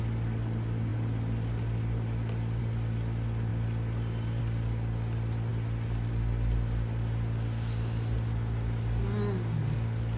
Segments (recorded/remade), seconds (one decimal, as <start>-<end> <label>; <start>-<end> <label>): 0.0-10.2 recorded

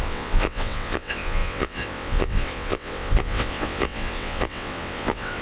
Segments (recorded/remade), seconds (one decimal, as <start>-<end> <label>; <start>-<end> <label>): 0.0-5.4 remade

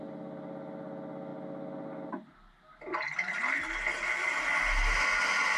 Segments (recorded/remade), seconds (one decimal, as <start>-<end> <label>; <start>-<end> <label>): 0.0-5.6 recorded

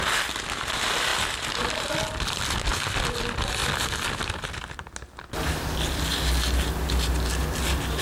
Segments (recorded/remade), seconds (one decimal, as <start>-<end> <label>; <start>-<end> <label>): 0.0-8.0 recorded

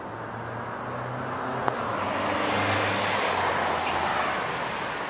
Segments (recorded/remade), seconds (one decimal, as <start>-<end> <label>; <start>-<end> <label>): 0.0-5.1 recorded